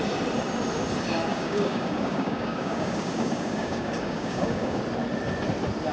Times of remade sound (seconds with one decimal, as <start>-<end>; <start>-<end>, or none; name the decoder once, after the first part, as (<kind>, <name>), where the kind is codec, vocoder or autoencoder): 1.3-4.8 (codec, DAC)